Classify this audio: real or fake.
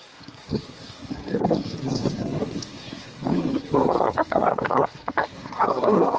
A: fake